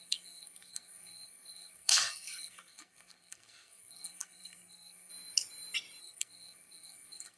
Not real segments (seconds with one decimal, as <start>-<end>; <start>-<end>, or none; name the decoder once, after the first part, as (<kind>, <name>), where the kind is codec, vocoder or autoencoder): 0.0-5.1 (codec, SNAC); 6.0-7.4